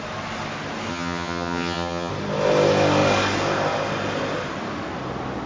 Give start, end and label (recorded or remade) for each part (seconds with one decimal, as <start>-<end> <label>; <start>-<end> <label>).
0.0-0.9 recorded; 0.9-2.1 remade; 2.1-5.5 recorded